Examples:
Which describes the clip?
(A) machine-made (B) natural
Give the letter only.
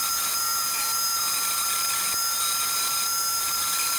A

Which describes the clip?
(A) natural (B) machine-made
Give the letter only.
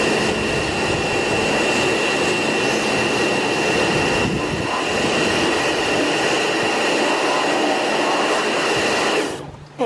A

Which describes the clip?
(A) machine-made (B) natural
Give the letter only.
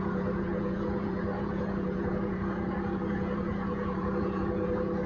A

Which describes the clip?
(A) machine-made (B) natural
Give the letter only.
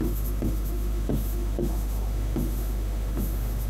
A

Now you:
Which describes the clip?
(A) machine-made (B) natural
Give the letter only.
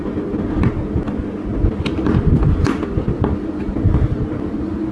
B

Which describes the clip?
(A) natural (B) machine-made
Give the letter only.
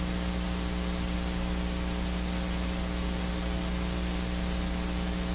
A